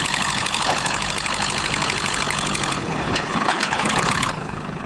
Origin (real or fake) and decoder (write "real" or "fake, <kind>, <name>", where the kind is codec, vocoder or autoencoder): fake, codec, HILCodec